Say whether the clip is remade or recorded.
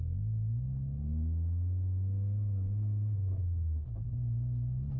recorded